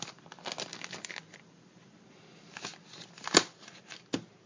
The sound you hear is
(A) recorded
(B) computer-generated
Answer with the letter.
A